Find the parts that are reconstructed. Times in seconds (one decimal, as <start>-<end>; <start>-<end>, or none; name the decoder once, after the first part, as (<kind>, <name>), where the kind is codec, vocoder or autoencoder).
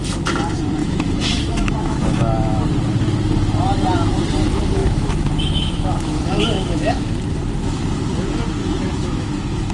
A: 0.8-2.6 (autoencoder, DAC-VAE); 4.8-7.2; 8.6-9.7